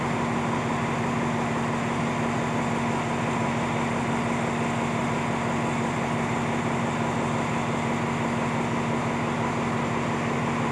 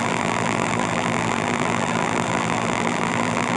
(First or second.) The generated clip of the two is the second